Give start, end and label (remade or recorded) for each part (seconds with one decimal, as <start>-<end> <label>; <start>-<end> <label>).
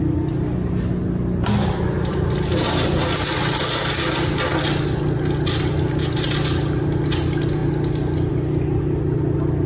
0.0-9.7 recorded